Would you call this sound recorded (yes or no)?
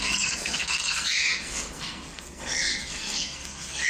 no